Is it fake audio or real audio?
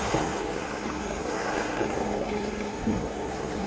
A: fake